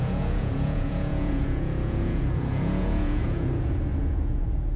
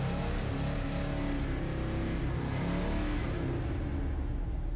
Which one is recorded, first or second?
second